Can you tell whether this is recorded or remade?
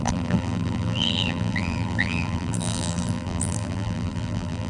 remade